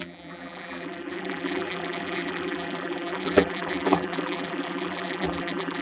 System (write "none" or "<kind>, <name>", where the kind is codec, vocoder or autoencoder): vocoder, BigVGAN v2